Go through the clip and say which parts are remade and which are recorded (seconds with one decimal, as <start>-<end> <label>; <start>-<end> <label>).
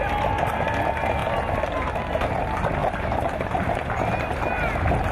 0.0-2.8 recorded; 2.8-3.7 remade; 3.7-5.1 recorded